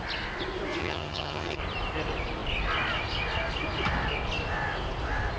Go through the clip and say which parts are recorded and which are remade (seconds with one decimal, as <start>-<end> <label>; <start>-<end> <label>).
0.0-0.8 recorded; 0.8-1.6 remade; 1.6-5.4 recorded